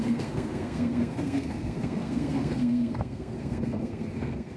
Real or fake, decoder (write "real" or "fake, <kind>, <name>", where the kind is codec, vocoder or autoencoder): fake, codec, SNAC